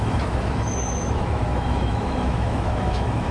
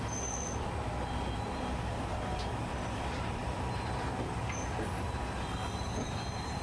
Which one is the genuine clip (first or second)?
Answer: second